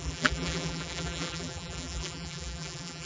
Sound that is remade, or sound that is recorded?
remade